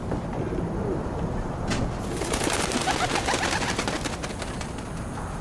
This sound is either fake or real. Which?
real